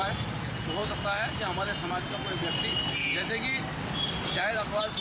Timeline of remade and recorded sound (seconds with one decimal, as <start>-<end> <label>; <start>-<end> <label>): 0.0-0.8 remade; 0.8-3.8 recorded; 3.8-5.0 remade

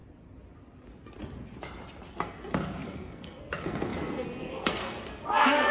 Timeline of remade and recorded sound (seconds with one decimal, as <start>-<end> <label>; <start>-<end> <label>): 0.0-2.1 recorded; 2.1-5.7 remade

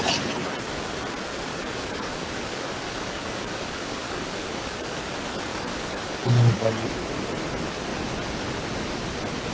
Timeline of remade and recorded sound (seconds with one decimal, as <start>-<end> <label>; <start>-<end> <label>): 0.0-1.5 recorded; 1.5-5.0 remade; 5.0-5.5 recorded; 5.5-6.7 remade; 6.7-9.5 recorded

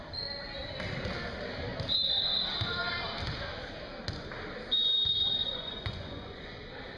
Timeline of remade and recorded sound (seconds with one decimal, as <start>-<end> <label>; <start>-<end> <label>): 0.0-5.4 recorded; 5.4-6.6 remade; 6.6-7.0 recorded

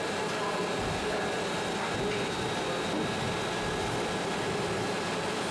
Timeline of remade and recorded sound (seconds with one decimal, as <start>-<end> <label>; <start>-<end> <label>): 0.0-5.5 recorded

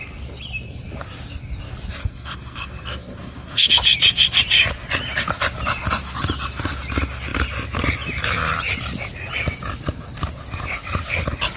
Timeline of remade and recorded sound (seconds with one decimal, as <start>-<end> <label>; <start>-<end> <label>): 0.0-2.0 recorded; 2.0-3.7 remade; 3.7-11.6 recorded

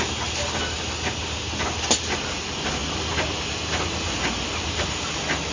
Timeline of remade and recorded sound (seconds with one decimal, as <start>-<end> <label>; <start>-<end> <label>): 0.0-5.5 recorded